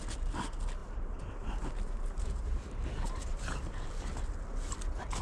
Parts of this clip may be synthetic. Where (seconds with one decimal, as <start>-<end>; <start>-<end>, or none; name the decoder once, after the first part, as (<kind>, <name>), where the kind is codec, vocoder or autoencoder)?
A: 0.8-3.9 (vocoder, BigVGAN v2)